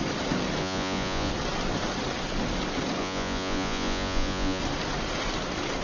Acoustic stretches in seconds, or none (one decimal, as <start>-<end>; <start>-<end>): 0.0-0.6; 1.3-3.0; 4.6-5.8